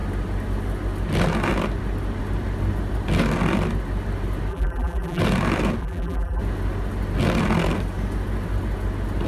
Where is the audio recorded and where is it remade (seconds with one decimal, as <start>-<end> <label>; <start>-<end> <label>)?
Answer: 0.0-4.5 recorded; 4.5-5.2 remade; 5.2-5.8 recorded; 5.8-6.4 remade; 6.4-9.3 recorded